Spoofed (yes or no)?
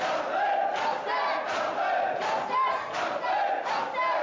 no